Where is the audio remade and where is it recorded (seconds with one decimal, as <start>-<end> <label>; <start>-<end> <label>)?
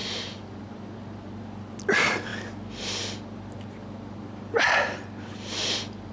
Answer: 0.0-6.1 recorded